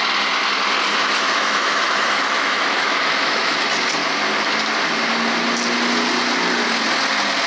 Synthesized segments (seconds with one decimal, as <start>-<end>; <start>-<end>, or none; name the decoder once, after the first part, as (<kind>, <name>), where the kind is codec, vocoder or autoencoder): 0.9-3.5 (autoencoder, DAC-VAE)